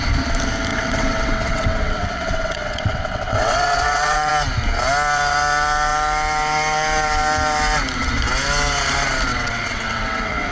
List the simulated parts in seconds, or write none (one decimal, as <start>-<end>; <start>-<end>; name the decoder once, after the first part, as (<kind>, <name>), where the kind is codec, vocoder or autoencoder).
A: 0.7-4.3 (vocoder, WaveNeXt); 9.3-10.5